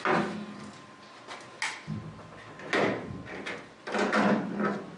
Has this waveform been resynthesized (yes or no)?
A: no